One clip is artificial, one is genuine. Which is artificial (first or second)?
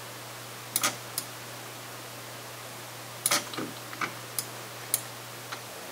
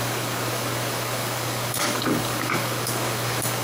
second